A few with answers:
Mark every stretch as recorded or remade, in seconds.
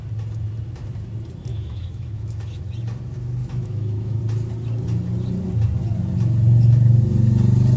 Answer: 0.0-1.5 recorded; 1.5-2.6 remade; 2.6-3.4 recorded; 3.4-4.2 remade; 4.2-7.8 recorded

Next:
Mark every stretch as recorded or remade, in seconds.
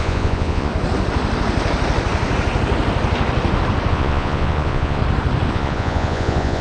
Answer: 0.0-0.7 remade; 0.7-3.9 recorded; 3.9-5.0 remade; 5.0-5.5 recorded; 5.5-6.6 remade